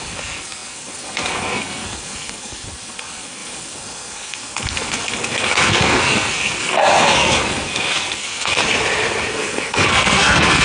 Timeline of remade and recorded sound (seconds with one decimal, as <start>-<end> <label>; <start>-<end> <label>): 0.0-8.6 remade; 8.6-9.3 recorded; 9.3-10.6 remade